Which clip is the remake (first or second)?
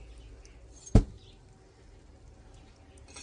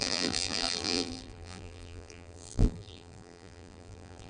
second